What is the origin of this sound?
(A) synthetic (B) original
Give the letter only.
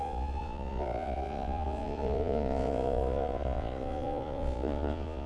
A